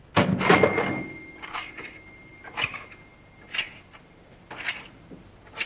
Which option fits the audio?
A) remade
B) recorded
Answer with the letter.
B